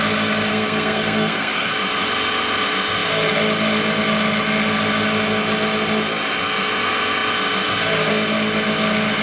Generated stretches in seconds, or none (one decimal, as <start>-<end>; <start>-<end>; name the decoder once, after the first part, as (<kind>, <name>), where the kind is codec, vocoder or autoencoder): 0.5-1.7 (codec, SNAC)